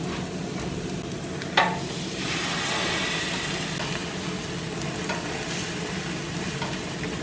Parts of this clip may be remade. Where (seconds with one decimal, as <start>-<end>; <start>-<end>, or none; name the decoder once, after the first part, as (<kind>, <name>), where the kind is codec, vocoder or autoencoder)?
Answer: none